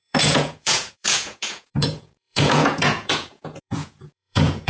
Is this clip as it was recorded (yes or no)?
no